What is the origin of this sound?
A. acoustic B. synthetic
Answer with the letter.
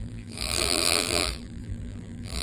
B